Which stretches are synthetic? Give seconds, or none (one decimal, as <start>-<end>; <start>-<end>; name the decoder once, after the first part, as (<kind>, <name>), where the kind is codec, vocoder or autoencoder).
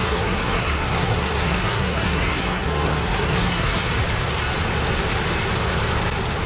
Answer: 0.0-3.9 (codec, SNAC)